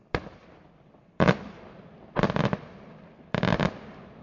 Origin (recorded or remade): remade